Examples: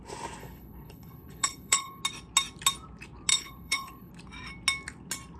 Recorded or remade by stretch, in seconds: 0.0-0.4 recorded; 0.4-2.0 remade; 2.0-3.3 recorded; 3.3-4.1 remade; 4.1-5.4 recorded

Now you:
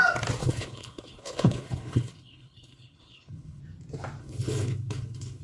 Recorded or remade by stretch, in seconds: 0.0-0.4 recorded; 0.4-3.6 remade; 3.6-4.2 recorded; 4.2-5.4 remade

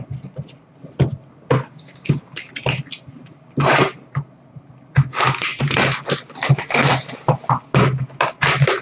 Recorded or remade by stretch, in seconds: 0.0-8.8 recorded

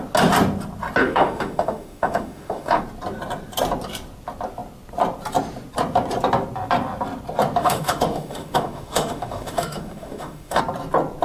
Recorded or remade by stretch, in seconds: 0.0-1.0 recorded; 1.0-2.8 remade; 2.8-7.6 recorded; 7.6-10.6 remade; 10.6-11.2 recorded

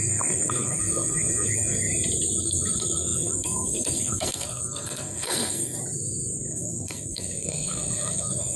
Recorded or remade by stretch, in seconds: 0.0-1.9 remade; 1.9-2.4 recorded; 2.4-5.8 remade; 5.8-6.5 recorded; 6.5-8.6 remade

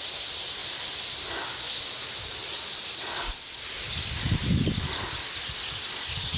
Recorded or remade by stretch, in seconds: 0.0-6.4 recorded

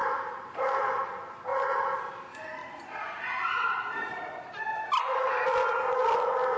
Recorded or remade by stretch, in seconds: 0.0-1.0 remade; 1.0-1.5 recorded; 1.5-2.1 remade; 2.1-2.6 recorded; 2.6-4.9 remade; 4.9-6.6 recorded